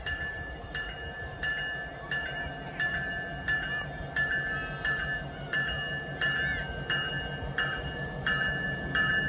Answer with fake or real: real